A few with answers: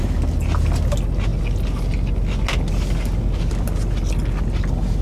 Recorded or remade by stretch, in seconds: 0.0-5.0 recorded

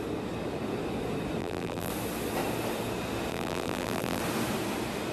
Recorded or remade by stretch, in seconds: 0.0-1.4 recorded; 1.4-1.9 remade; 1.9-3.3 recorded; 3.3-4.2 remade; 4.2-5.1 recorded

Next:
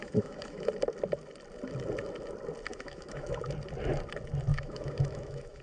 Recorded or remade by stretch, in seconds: 0.0-0.7 remade; 0.7-2.7 recorded; 2.7-3.4 remade; 3.4-4.5 recorded; 4.5-5.6 remade